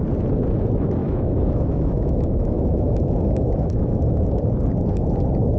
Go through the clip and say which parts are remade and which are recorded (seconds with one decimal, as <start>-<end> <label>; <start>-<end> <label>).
0.0-1.0 recorded; 1.0-4.4 remade; 4.4-5.6 recorded